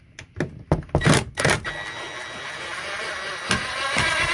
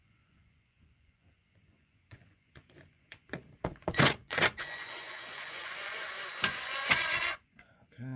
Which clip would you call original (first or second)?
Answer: first